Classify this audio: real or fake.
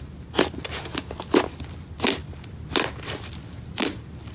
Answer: real